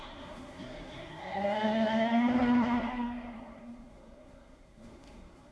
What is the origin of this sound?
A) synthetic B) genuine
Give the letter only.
A